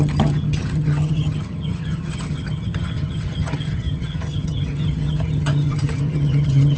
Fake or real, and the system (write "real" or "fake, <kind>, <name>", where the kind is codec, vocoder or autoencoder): fake, vocoder, HiFi-GAN